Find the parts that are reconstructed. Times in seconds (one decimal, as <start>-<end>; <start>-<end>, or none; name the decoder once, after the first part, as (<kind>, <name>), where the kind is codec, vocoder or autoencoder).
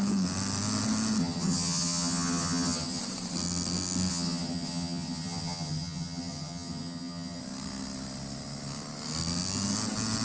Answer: 1.2-3.0 (vocoder, HiFi-GAN); 4.1-7.4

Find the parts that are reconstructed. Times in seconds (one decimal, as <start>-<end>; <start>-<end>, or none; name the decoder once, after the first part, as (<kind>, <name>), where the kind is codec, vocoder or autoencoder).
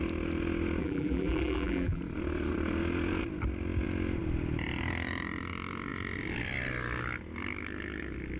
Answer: 0.8-2.0 (vocoder, BigVGAN v2)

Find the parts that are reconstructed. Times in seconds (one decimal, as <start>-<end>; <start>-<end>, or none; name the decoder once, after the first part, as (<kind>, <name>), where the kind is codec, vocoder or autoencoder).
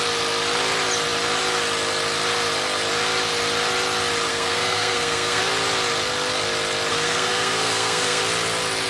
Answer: 4.3-5.4 (codec, SNAC); 6.9-8.2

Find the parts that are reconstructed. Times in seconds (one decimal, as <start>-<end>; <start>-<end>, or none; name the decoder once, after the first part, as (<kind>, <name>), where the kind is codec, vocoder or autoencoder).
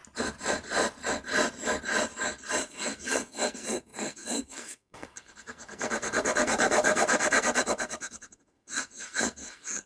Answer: 2.6-9.9 (codec, SNAC)